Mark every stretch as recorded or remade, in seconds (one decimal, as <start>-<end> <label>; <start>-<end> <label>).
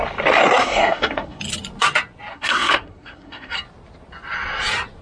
0.0-0.4 recorded; 0.4-1.4 remade; 1.4-2.3 recorded; 2.3-3.5 remade; 3.5-5.0 recorded